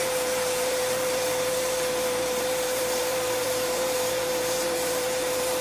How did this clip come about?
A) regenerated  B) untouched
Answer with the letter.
A